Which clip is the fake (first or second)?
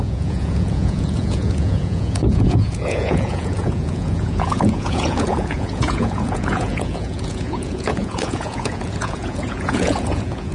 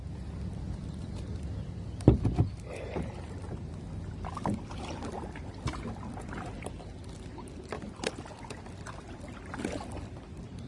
first